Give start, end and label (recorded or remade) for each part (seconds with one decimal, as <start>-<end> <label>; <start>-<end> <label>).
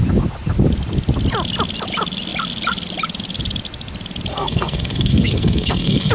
0.0-4.3 recorded; 4.3-6.1 remade